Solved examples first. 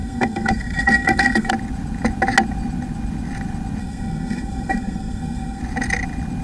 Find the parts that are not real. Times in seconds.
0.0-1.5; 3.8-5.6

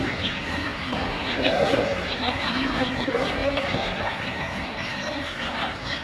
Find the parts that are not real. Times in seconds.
0.0-6.0